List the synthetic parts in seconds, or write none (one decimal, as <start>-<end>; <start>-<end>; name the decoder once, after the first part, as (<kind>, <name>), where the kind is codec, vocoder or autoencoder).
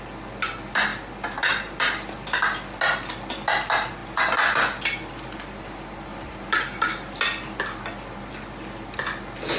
none